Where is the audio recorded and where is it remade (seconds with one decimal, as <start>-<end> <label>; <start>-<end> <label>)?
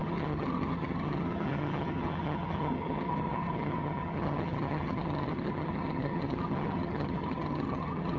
0.0-8.2 remade